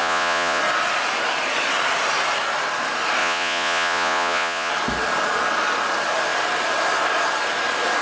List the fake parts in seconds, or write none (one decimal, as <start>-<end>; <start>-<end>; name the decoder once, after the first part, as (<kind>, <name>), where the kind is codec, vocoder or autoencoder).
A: 0.0-0.6 (vocoder, Vocos); 3.2-4.7